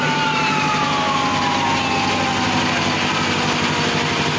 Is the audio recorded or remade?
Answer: recorded